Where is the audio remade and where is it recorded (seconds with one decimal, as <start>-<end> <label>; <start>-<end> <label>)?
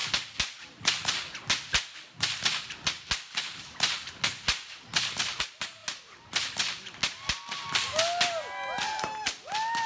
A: 0.0-9.9 recorded